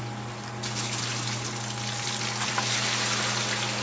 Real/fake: real